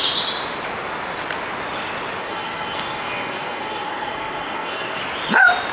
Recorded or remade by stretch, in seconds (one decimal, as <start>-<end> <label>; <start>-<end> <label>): 0.0-2.2 recorded; 2.2-5.0 remade; 5.0-5.7 recorded